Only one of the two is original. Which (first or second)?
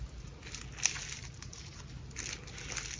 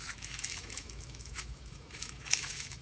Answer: first